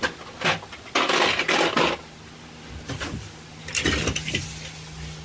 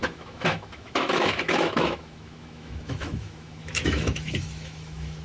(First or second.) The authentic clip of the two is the first